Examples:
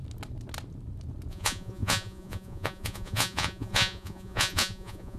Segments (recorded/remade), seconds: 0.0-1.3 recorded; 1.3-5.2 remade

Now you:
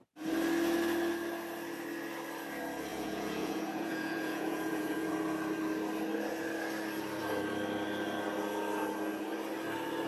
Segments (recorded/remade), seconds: 0.0-2.9 recorded; 2.9-5.1 remade; 5.1-10.1 recorded

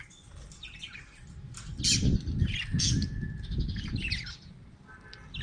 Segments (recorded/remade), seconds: 0.0-5.4 recorded

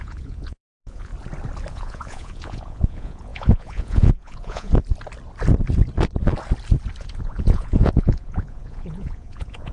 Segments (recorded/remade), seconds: 0.0-1.1 remade; 1.1-1.7 recorded; 1.7-4.7 remade; 4.7-7.0 recorded; 7.0-9.7 remade

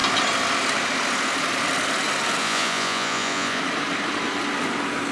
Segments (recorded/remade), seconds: 0.0-2.4 recorded; 2.4-3.6 remade; 3.6-5.1 recorded